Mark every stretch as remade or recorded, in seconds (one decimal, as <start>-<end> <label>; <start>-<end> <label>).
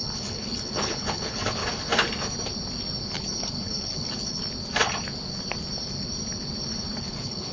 0.0-1.6 remade; 1.6-3.2 recorded; 3.2-4.4 remade; 4.4-7.0 recorded; 7.0-7.5 remade